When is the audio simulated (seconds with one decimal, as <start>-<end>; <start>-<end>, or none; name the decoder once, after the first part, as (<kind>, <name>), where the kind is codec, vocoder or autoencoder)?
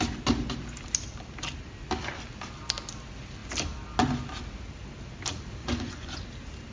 5.6-6.2 (vocoder, Vocos)